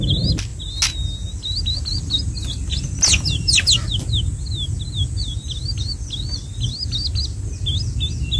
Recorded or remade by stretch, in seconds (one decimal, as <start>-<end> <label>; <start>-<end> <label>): 0.0-8.4 recorded